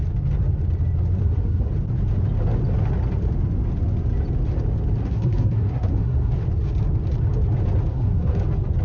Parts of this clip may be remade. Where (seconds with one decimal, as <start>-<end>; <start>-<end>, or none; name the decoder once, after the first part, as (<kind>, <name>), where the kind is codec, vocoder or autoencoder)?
1.2-1.7 (codec, SNAC); 5.0-6.3; 7.9-8.4